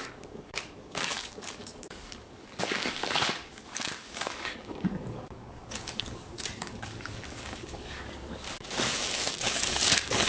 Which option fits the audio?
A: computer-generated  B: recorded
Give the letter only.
A